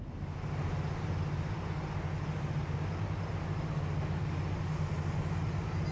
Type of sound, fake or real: real